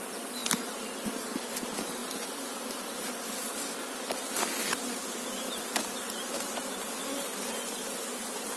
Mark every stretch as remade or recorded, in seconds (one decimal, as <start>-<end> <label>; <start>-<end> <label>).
0.0-8.6 recorded